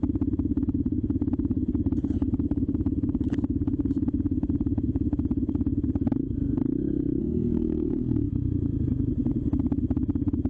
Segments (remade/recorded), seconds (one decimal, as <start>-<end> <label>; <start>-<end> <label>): 0.0-7.2 recorded; 7.2-8.3 remade; 8.3-10.5 recorded